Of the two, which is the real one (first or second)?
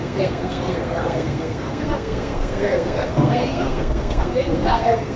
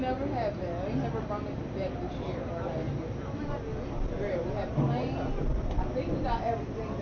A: second